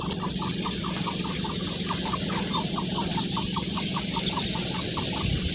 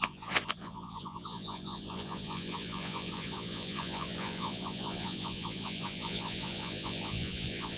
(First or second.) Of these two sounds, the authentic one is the first